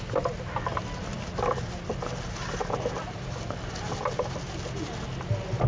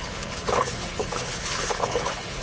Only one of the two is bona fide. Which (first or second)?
first